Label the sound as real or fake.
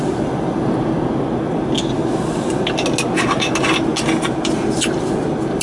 real